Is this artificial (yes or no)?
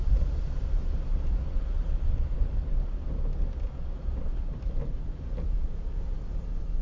no